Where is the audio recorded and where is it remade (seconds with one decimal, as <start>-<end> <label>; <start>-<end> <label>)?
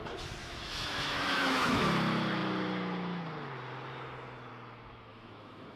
0.0-0.4 recorded; 0.4-1.8 remade; 1.8-5.1 recorded; 5.1-5.8 remade